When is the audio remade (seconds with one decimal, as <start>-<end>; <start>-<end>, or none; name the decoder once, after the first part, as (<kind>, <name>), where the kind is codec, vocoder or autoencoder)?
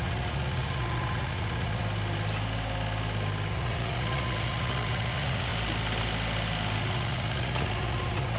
0.0-1.8 (vocoder, Vocos); 3.5-5.5; 6.8-8.4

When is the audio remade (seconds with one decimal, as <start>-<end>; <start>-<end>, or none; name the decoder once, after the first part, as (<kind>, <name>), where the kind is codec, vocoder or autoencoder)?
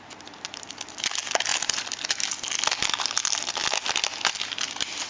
none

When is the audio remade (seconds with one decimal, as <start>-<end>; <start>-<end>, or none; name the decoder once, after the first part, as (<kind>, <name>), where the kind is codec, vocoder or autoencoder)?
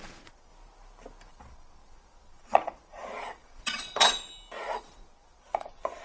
0.0-0.5 (vocoder, Vocos); 1.3-4.3; 4.8-6.0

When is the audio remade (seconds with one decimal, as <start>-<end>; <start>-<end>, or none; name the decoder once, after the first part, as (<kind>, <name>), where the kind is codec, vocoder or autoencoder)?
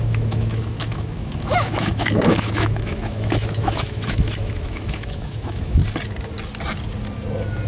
0.0-5.8 (autoencoder, DAC-VAE)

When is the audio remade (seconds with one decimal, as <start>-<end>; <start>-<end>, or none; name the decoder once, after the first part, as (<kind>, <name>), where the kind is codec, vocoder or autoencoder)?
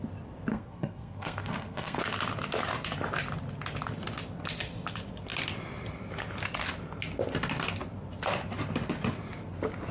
0.5-2.0 (codec, SNAC)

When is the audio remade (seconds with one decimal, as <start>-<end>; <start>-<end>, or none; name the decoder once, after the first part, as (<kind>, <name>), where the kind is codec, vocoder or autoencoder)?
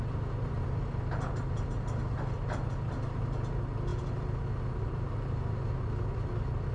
none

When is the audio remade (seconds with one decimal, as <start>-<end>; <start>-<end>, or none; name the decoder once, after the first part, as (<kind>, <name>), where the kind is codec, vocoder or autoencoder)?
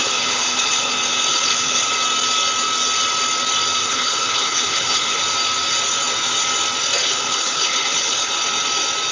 0.0-0.9 (codec, HILCodec); 1.3-1.9; 3.8-5.2; 7.0-8.3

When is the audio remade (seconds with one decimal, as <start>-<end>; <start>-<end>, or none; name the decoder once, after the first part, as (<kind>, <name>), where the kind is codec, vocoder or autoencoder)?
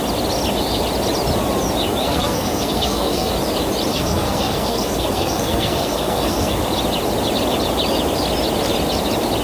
2.0-3.3 (codec, SNAC); 3.9-6.6